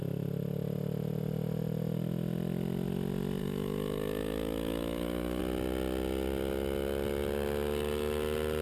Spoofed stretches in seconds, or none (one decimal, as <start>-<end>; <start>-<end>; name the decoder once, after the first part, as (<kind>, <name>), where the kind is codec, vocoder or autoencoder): 3.4-5.4 (autoencoder, DAC-VAE)